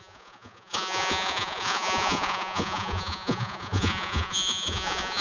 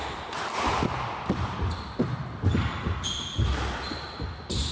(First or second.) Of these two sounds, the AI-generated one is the first